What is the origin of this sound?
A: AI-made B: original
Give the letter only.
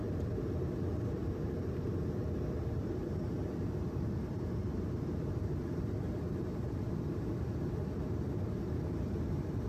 A